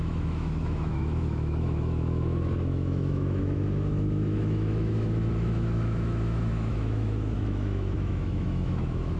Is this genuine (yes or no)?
no